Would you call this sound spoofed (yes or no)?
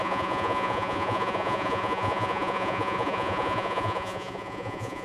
yes